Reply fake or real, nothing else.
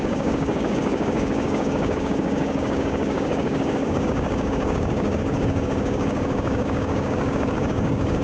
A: fake